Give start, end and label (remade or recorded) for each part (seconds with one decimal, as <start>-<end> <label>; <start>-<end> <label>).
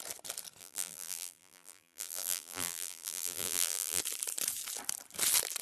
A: 0.0-0.6 recorded; 0.6-4.0 remade; 4.0-5.6 recorded